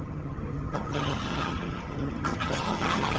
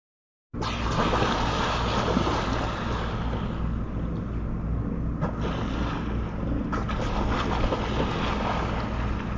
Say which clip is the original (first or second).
second